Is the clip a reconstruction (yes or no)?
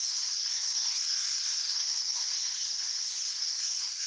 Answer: yes